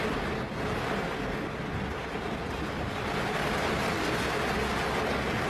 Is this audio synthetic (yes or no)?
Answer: no